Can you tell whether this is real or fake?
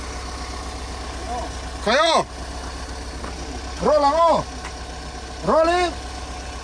real